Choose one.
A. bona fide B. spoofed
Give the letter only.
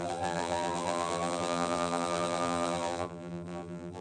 B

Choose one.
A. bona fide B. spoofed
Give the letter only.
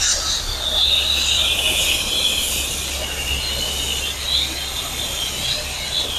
A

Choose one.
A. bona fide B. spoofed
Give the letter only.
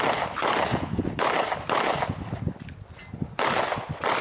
A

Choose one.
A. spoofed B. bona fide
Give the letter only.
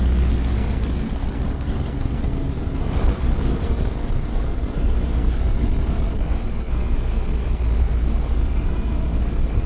A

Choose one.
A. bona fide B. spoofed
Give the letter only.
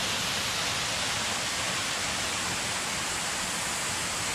A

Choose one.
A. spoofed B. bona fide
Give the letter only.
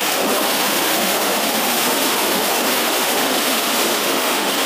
A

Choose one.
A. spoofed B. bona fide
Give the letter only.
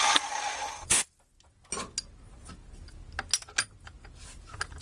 B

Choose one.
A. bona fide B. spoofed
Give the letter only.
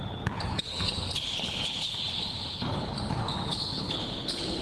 B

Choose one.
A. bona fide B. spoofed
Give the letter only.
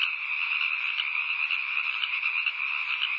A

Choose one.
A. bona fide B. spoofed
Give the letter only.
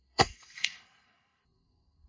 B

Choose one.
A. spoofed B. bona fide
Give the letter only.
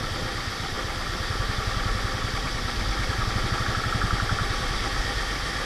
B